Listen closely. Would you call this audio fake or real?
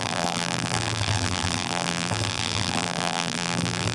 fake